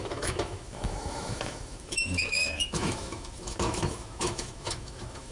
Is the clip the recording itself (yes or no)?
no